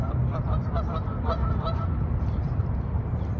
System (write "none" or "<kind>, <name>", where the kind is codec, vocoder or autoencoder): vocoder, BigVGAN v2